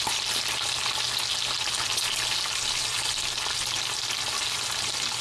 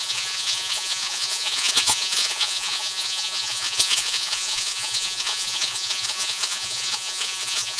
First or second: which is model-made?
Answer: second